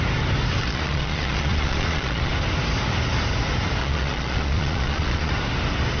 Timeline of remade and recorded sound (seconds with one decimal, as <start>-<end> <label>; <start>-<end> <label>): 0.0-0.6 recorded; 0.6-2.3 remade; 2.3-3.8 recorded; 3.8-5.3 remade; 5.3-6.0 recorded